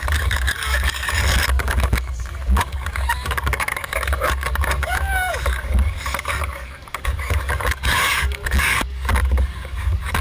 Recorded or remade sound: remade